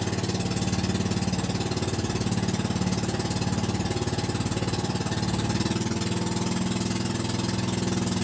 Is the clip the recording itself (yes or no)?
yes